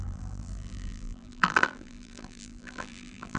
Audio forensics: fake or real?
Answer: fake